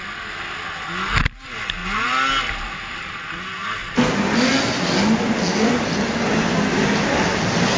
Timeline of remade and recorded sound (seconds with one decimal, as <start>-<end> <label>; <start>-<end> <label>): 0.0-7.8 recorded